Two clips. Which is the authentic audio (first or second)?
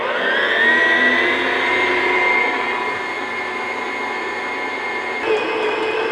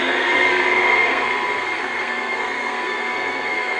first